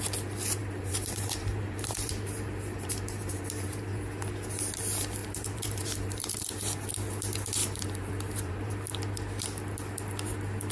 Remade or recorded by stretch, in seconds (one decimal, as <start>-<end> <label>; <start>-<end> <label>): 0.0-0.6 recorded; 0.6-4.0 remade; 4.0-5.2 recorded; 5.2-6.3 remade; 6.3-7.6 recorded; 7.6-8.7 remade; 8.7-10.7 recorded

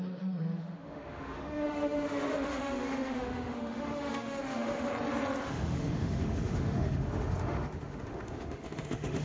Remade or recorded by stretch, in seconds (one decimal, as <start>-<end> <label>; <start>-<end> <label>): 0.0-4.9 remade; 4.9-5.5 recorded; 5.5-9.2 remade

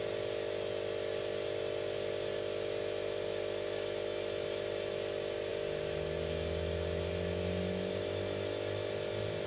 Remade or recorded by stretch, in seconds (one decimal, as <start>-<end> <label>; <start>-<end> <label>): 0.0-9.5 recorded

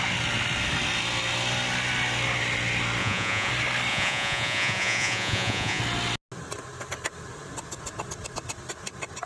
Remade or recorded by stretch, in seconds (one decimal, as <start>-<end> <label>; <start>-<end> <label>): 0.0-3.0 recorded; 3.0-3.5 remade; 3.5-3.9 recorded; 3.9-5.8 remade; 5.8-9.3 recorded

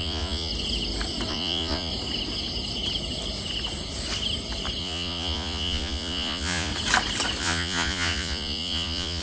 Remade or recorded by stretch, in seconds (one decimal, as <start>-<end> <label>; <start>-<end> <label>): 0.0-0.5 remade; 0.5-1.3 recorded; 1.3-1.9 remade; 1.9-4.8 recorded; 4.8-6.7 remade; 6.7-7.4 recorded; 7.4-9.2 remade

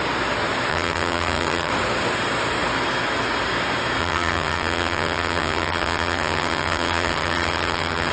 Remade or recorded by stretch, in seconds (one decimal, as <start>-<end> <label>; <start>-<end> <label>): 0.0-0.7 recorded; 0.7-1.7 remade; 1.7-4.0 recorded; 4.0-8.1 remade

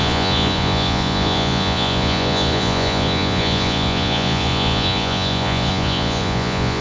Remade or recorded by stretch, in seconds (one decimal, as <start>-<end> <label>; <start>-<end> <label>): 0.0-6.8 remade

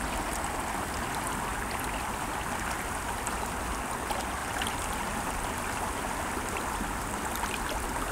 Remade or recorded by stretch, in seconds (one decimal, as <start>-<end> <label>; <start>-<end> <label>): 0.0-8.1 recorded